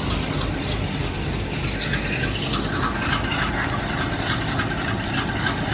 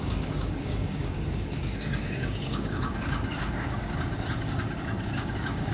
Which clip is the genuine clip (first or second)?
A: first